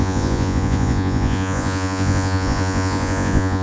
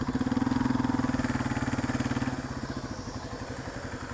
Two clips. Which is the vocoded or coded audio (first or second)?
first